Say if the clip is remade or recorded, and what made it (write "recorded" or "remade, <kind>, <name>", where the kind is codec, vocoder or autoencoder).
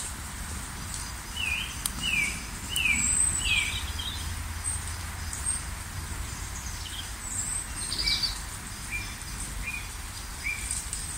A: recorded